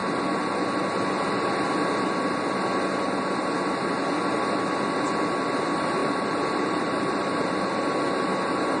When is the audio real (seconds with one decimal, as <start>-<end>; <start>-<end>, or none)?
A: 0.0-6.0; 7.7-8.8